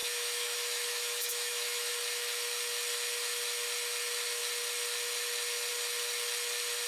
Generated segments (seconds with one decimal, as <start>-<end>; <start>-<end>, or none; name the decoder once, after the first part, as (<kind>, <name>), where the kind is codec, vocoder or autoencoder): 0.0-1.9 (autoencoder, DAC-VAE)

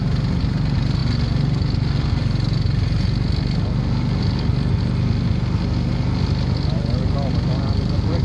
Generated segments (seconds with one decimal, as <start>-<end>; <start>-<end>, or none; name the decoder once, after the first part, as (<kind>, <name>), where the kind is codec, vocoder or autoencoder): none

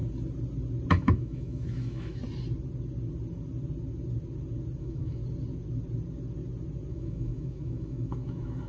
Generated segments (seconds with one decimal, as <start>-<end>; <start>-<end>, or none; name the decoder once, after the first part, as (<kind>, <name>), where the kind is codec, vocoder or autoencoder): 0.9-2.2 (autoencoder, DAC-VAE); 4.8-5.2; 6.9-8.7

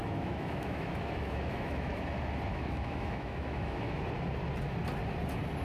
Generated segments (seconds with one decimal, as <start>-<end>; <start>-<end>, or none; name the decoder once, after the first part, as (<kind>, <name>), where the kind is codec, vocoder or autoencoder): 0.0-2.0 (autoencoder, DAC-VAE); 2.5-4.0

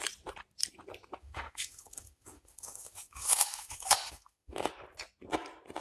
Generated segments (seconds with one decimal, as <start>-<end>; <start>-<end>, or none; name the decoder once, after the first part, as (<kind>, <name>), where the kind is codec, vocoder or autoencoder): 1.2-4.7 (autoencoder, DAC-VAE)